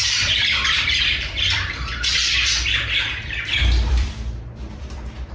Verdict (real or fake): fake